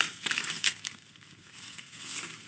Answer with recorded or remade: remade